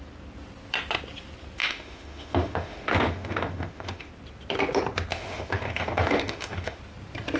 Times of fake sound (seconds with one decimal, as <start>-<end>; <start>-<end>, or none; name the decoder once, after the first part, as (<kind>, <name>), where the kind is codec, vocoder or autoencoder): 1.6-4.1 (autoencoder, DAC-VAE); 5.1-6.8